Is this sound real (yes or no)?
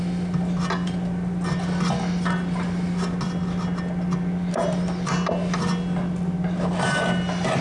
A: yes